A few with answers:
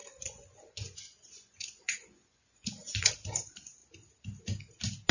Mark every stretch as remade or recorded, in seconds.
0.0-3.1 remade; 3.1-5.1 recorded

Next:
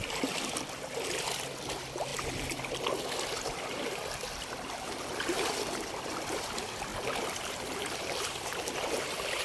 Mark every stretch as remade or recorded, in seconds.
0.0-2.1 remade; 2.1-4.5 recorded; 4.5-6.9 remade; 6.9-8.0 recorded; 8.0-9.4 remade

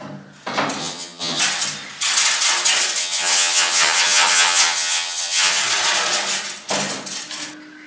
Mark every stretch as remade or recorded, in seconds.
0.0-0.8 recorded; 0.8-1.4 remade; 1.4-3.0 recorded; 3.0-5.6 remade; 5.6-7.9 recorded

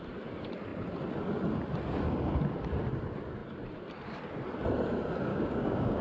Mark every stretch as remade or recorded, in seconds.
0.0-5.3 recorded; 5.3-6.0 remade

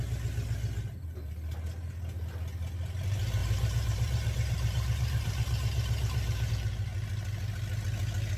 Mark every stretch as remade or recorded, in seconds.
0.0-3.4 recorded; 3.4-6.5 remade; 6.5-8.4 recorded

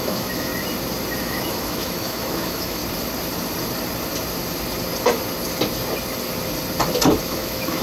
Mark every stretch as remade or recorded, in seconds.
0.0-0.5 remade; 0.5-1.2 recorded; 1.2-2.8 remade; 2.8-7.2 recorded; 7.2-7.8 remade

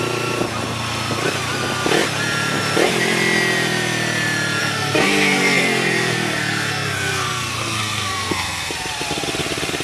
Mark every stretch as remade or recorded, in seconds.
0.0-4.6 recorded; 4.6-8.7 remade; 8.7-9.8 recorded